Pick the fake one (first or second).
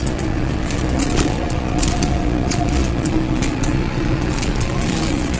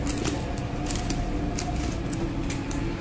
first